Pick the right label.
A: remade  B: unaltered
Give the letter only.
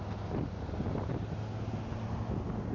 B